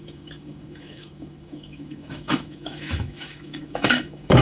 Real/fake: fake